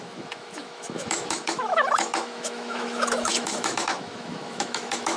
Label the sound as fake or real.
fake